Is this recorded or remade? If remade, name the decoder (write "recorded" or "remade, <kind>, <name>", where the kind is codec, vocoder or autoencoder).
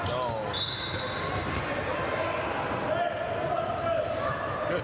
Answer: recorded